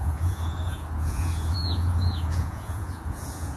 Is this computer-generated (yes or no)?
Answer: yes